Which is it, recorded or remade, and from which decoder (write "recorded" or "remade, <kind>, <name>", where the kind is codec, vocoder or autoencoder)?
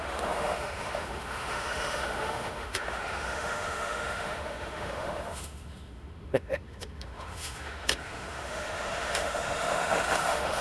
remade, autoencoder, DAC-VAE